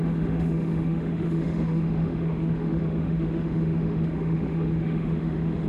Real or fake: fake